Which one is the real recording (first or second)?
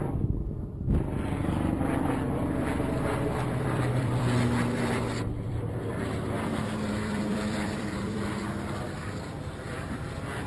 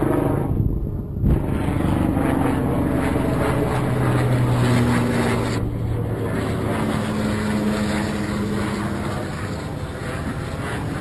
second